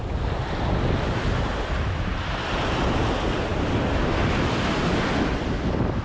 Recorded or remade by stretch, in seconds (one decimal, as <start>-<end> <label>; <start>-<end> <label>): 0.0-6.0 recorded